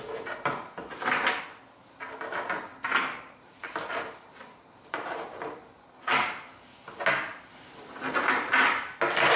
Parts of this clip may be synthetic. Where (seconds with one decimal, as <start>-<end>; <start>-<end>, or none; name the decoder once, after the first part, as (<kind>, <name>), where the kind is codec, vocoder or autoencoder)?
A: 2.7-5.8 (vocoder, BigVGAN v2)